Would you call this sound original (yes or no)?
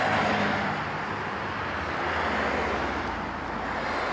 yes